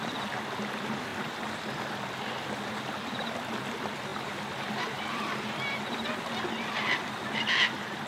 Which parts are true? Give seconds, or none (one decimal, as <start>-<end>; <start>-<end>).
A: 0.0-8.1

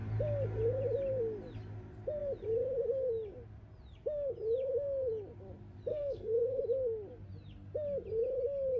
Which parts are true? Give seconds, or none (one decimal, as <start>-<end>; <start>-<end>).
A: 0.0-5.9; 6.6-8.8